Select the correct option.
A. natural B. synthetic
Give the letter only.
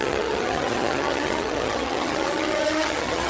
B